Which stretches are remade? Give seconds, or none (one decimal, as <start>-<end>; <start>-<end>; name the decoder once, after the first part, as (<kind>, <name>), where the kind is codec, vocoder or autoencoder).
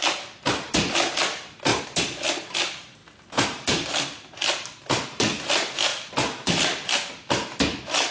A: none